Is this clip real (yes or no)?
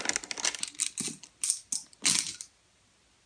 yes